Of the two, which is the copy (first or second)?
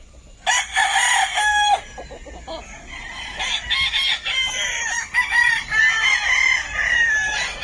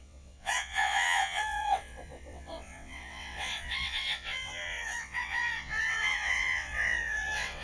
second